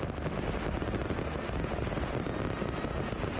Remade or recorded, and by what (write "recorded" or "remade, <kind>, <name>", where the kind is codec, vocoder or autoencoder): recorded